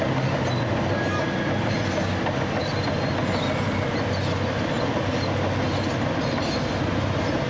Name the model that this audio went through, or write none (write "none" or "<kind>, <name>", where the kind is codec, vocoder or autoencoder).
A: none